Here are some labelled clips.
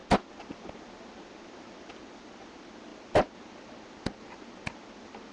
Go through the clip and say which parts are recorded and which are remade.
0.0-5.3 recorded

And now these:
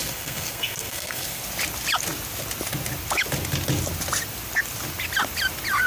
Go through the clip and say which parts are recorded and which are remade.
0.0-1.4 remade; 1.4-5.9 recorded